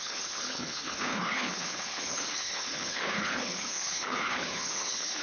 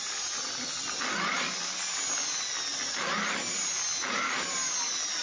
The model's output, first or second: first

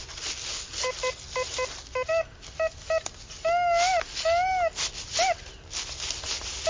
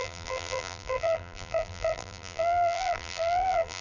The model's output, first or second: second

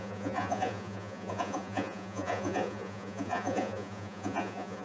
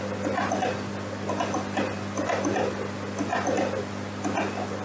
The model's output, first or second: first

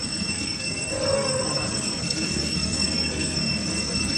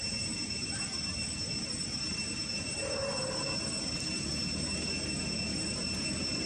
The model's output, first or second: first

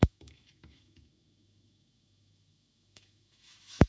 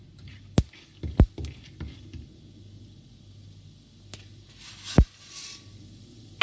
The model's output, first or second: first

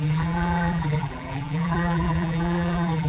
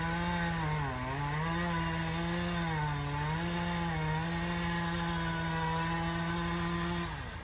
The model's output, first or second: first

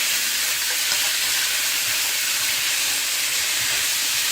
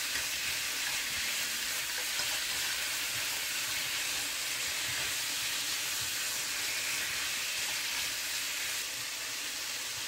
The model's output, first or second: first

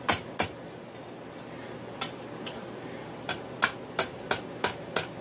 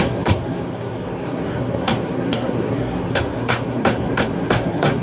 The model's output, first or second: second